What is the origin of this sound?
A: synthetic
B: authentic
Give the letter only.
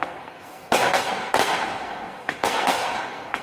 A